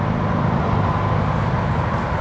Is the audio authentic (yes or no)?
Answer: yes